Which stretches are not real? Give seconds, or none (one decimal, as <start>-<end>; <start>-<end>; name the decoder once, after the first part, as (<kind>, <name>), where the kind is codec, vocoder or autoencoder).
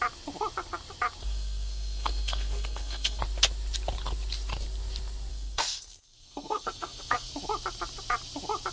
1.2-3.2 (codec, SNAC); 5.3-7.3